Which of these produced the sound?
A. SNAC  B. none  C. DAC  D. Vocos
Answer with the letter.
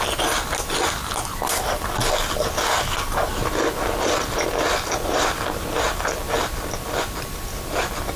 B